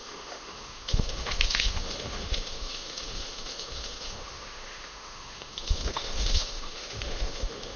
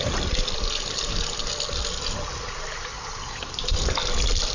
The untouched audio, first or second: second